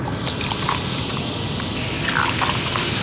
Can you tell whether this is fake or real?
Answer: real